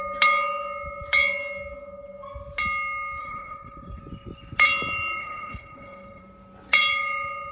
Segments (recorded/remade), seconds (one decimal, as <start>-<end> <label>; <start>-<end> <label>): 0.0-3.2 recorded; 3.2-4.0 remade; 4.0-5.2 recorded; 5.2-6.2 remade; 6.2-7.5 recorded